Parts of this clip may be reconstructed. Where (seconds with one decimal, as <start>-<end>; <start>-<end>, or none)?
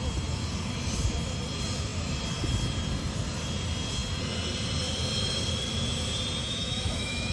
6.4-7.3